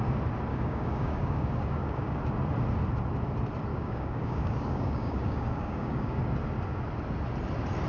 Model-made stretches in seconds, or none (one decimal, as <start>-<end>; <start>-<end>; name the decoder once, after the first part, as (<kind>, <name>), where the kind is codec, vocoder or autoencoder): 0.5-2.2 (codec, DAC); 3.7-6.2